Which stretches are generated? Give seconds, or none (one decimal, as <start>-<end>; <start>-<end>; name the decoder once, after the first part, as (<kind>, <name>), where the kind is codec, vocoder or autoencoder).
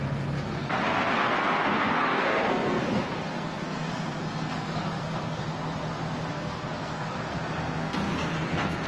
0.0-5.4 (codec, SNAC); 6.3-8.9